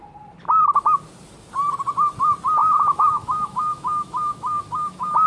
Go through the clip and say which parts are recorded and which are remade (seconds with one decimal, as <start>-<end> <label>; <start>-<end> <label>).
0.0-2.6 recorded; 2.6-5.3 remade